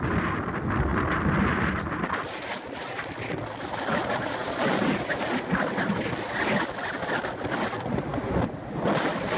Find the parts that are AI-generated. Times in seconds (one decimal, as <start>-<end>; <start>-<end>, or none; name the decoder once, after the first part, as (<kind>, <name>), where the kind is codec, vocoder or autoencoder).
none